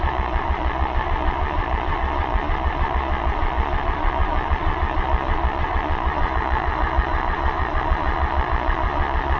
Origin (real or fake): fake